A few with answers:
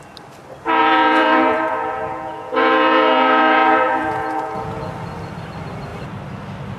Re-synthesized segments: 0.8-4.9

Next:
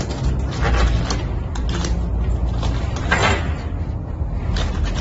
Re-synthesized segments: none

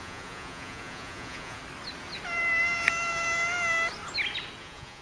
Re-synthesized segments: 0.0-1.6; 4.6-5.0

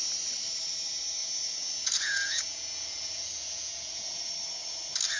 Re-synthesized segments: 1.2-4.3

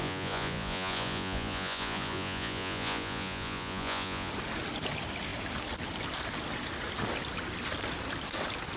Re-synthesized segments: 0.0-4.3

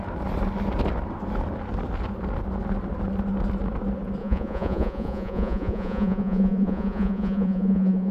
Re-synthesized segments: 4.2-8.1

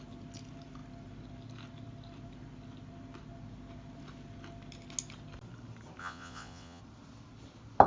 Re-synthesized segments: 6.0-6.8